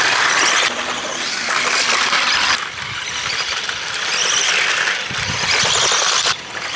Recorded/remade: remade